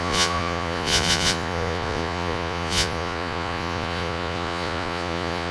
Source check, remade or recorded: remade